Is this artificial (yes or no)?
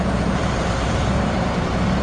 yes